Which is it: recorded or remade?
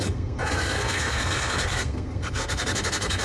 remade